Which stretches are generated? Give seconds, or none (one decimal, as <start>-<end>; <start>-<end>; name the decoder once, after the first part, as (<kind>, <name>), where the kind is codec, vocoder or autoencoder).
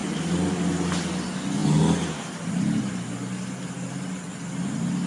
none